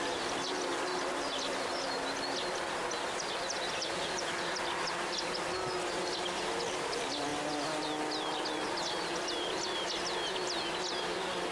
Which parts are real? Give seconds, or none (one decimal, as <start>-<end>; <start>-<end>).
0.0-11.5